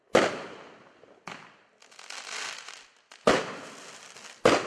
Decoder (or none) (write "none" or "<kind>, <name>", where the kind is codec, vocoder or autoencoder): none